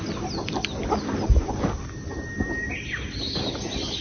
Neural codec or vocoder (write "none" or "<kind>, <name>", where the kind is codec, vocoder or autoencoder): none